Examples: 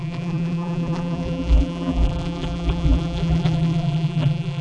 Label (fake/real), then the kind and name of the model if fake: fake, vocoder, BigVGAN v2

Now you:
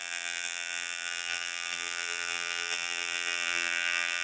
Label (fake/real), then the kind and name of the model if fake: fake, vocoder, BigVGAN v2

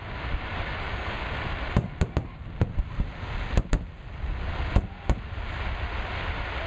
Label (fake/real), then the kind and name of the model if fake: real